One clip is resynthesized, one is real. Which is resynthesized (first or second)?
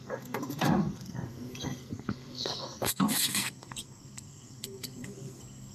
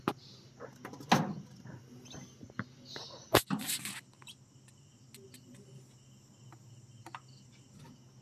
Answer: first